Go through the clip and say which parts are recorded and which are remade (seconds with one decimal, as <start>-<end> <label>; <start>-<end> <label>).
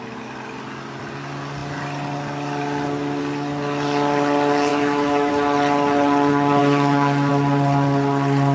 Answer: 0.0-4.7 recorded; 4.7-5.3 remade; 5.3-6.6 recorded; 6.6-7.3 remade; 7.3-8.5 recorded